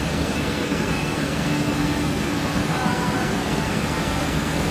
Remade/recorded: remade